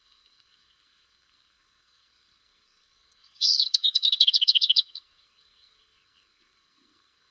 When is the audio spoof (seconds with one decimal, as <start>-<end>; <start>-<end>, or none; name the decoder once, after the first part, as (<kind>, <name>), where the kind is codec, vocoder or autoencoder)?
0.0-7.3 (codec, SNAC)